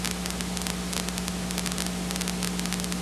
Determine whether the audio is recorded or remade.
recorded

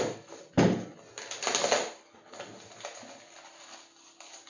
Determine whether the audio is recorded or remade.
recorded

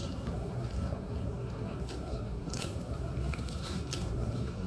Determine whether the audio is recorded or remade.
remade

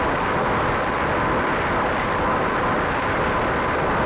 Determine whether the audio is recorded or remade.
recorded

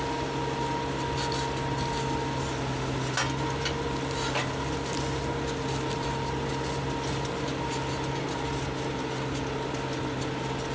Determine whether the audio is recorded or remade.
recorded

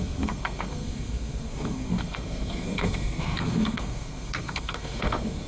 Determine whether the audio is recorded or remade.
remade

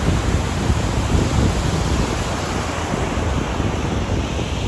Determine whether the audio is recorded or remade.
recorded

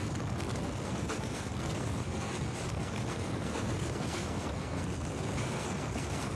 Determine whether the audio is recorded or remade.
remade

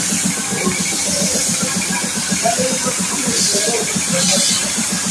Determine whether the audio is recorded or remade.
recorded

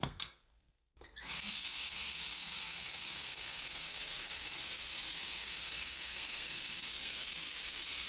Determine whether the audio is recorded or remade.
remade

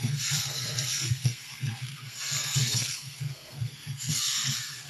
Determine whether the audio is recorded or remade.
remade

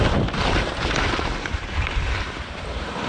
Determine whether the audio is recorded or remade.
recorded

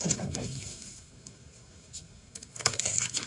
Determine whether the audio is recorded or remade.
remade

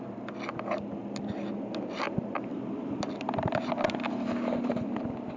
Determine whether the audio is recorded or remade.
recorded